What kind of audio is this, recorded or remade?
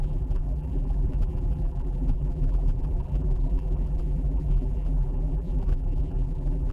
remade